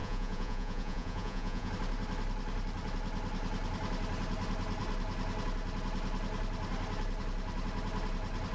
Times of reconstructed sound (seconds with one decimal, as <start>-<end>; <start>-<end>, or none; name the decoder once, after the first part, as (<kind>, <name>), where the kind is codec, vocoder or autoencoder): 0.0-1.7 (vocoder, Vocos)